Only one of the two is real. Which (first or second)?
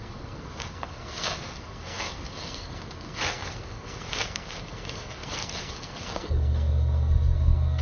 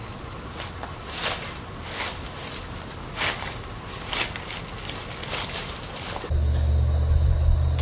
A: second